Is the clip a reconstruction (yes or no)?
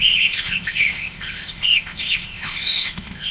yes